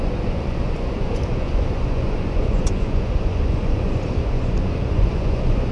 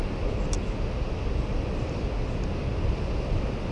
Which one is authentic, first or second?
second